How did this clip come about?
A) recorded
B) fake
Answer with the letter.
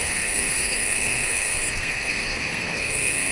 B